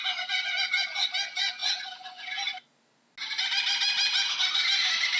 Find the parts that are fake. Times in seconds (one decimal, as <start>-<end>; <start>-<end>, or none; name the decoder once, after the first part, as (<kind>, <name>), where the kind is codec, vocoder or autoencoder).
none

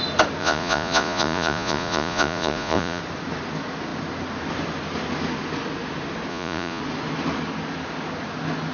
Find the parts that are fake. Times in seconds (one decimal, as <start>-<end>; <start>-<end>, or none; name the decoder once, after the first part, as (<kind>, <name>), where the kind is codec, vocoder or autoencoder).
0.4-3.0 (vocoder, Vocos); 6.3-6.8

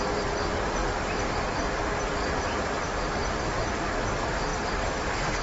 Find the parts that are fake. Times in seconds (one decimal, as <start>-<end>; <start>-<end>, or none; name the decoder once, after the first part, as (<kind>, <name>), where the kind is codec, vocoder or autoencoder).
0.8-4.0 (vocoder, BigVGAN v2)

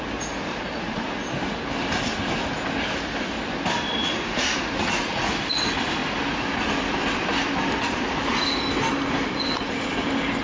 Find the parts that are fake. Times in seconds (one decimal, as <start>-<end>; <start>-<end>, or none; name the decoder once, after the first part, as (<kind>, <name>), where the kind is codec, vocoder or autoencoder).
0.5-1.3 (vocoder, Vocos); 4.0-5.3

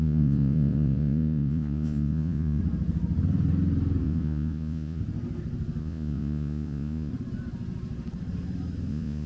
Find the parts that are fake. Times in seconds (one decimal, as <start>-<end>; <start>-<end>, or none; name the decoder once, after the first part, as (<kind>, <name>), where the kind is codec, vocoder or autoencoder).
0.0-2.6 (vocoder, Vocos); 4.0-5.0; 5.8-7.1; 8.9-9.3